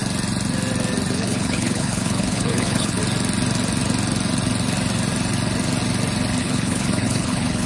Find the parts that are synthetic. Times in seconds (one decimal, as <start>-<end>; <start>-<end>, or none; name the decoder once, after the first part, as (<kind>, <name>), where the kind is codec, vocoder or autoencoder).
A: 1.1-3.0 (codec, HILCodec); 6.4-7.7